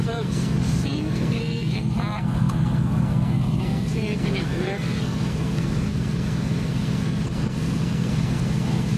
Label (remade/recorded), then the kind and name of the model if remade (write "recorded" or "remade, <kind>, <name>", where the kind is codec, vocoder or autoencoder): remade, codec, SNAC